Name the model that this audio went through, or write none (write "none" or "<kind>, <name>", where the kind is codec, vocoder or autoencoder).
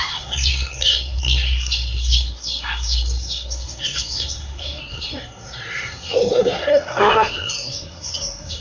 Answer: codec, SNAC